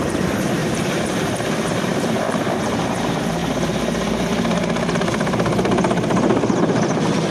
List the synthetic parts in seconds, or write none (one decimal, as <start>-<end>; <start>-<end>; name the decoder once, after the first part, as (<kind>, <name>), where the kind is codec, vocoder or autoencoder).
0.0-3.4 (vocoder, BigVGAN v2)